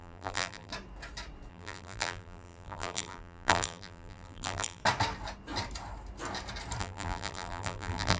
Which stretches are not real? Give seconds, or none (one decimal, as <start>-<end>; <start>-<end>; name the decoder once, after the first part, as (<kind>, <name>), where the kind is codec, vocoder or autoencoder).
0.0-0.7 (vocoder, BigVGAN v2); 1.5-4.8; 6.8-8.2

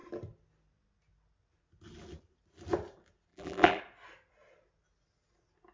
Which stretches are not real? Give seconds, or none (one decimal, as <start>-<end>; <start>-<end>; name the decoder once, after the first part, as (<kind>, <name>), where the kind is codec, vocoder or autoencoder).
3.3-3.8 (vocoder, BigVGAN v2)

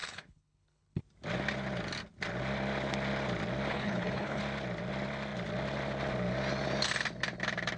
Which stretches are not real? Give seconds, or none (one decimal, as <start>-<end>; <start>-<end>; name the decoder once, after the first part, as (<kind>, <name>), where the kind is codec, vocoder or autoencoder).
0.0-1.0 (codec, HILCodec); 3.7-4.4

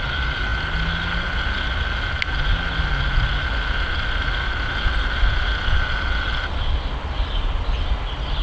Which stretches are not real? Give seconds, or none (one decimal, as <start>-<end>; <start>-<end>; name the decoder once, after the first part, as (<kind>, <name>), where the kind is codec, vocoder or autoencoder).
none

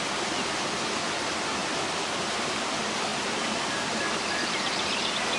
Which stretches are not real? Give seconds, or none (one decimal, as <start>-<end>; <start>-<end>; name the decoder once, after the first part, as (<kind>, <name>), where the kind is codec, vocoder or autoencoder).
none